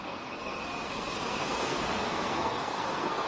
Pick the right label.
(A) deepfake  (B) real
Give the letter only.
A